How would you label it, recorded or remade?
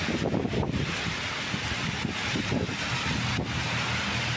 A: recorded